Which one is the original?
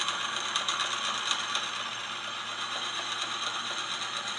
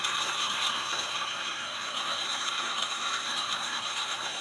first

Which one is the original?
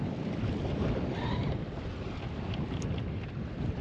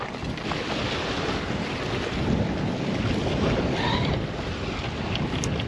second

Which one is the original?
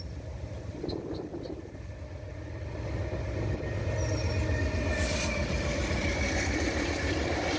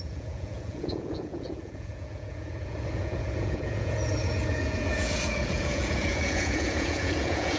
first